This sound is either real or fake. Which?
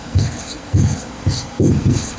fake